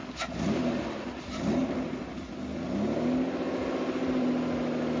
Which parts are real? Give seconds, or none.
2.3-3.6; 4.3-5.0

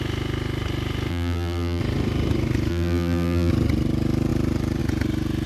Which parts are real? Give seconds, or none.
0.0-1.1; 1.8-2.7; 3.5-5.5

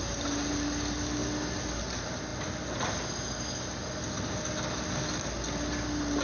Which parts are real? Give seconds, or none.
0.0-6.2

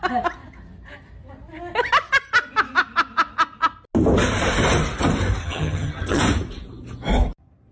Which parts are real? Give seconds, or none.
0.0-5.4; 6.2-7.7

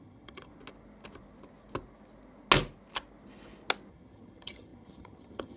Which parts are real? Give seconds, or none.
0.5-3.9

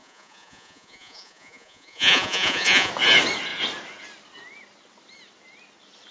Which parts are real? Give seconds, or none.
2.9-6.1

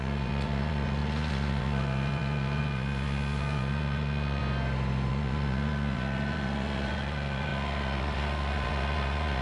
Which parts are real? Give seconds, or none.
4.4-5.1

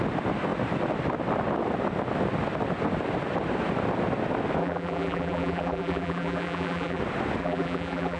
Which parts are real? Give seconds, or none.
0.0-4.6; 7.0-7.4